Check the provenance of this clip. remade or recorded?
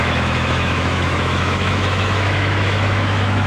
remade